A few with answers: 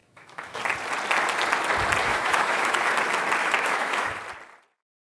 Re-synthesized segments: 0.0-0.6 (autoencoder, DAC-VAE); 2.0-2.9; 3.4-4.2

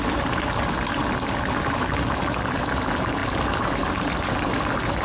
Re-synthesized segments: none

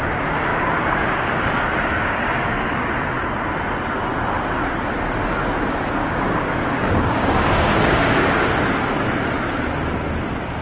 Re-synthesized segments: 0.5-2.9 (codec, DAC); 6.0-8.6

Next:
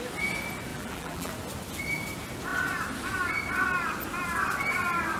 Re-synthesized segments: 0.7-1.3 (vocoder, BigVGAN v2)

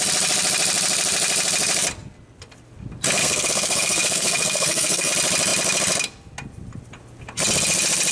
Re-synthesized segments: 3.2-5.1 (codec, SNAC)

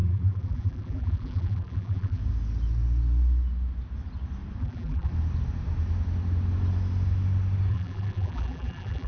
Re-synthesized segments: 0.0-2.2 (vocoder, BigVGAN v2); 4.6-5.1; 7.7-9.1